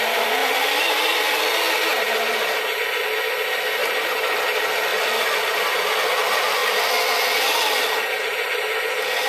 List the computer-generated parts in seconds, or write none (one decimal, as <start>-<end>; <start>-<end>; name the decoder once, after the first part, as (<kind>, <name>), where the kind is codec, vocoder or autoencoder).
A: 3.8-4.4 (vocoder, BigVGAN v2); 4.9-5.6